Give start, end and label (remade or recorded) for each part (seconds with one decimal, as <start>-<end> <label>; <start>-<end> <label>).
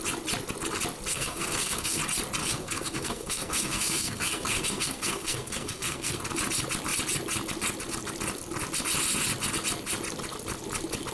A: 0.0-1.1 recorded; 1.1-2.0 remade; 2.0-2.4 recorded; 2.4-6.2 remade; 6.2-11.1 recorded